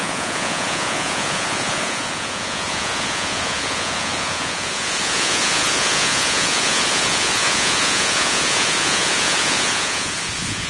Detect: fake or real fake